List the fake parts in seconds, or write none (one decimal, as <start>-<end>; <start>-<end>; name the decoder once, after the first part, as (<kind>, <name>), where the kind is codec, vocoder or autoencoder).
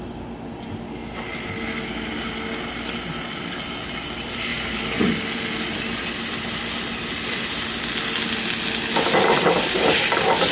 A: none